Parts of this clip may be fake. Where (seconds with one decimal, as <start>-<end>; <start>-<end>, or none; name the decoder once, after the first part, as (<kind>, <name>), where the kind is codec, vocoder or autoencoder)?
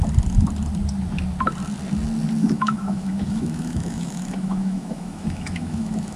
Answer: 2.4-6.2 (autoencoder, DAC-VAE)